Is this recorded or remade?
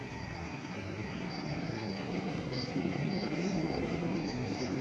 remade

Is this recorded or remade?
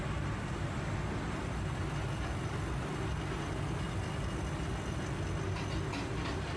recorded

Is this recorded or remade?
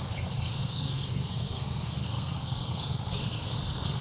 remade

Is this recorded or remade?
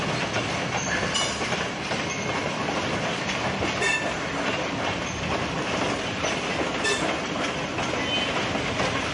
recorded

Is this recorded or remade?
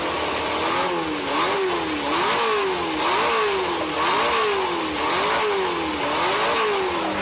recorded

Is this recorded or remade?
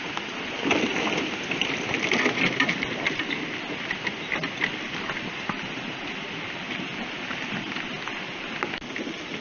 recorded